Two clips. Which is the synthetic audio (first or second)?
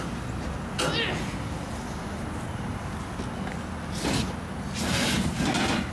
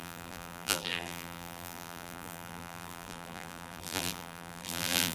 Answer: second